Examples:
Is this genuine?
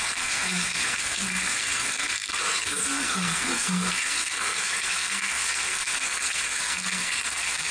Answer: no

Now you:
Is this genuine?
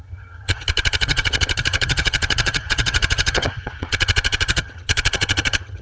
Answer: no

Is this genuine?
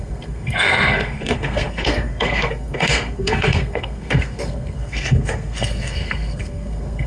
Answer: no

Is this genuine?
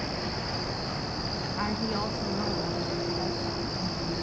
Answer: yes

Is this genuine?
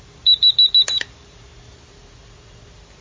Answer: yes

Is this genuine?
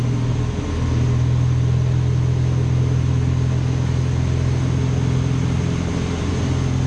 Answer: yes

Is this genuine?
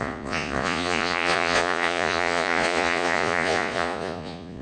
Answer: no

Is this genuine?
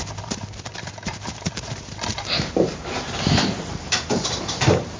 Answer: no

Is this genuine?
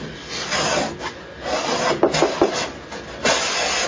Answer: yes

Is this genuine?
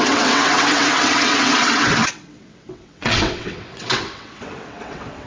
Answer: no